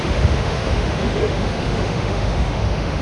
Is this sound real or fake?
fake